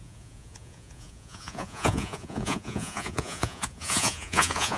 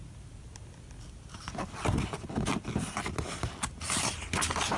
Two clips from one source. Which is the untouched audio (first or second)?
second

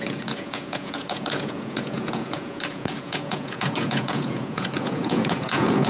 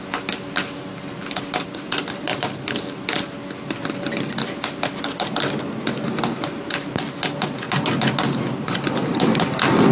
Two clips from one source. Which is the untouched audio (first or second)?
second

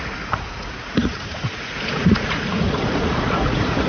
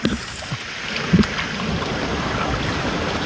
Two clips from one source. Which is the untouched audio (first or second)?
second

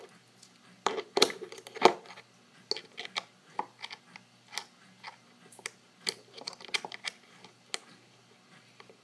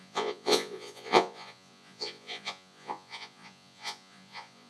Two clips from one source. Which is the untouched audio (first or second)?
first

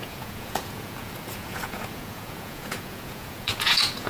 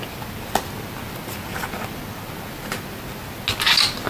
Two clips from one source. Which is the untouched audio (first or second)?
second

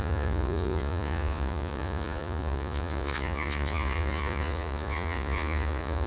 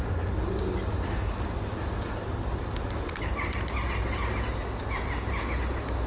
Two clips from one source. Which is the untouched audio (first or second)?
second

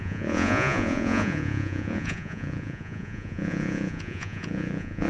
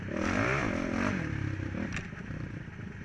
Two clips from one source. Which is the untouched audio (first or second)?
second